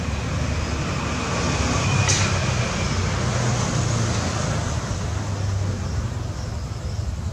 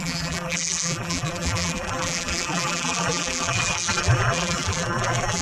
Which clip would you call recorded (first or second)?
first